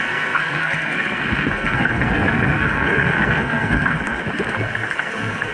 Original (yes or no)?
no